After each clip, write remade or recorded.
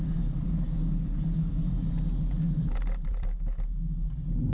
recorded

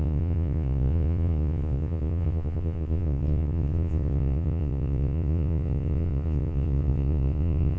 remade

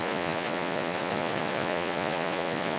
remade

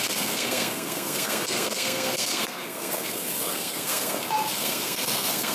remade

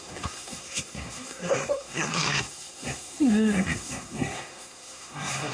remade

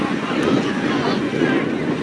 remade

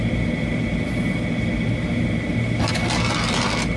recorded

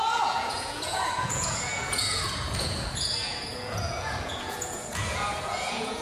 remade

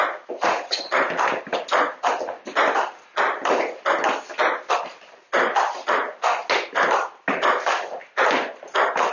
recorded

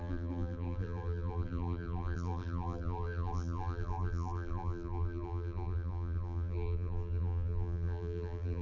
remade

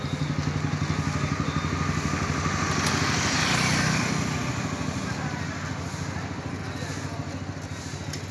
recorded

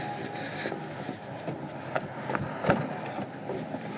recorded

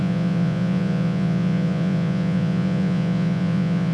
remade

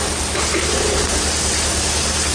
recorded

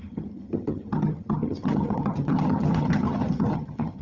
remade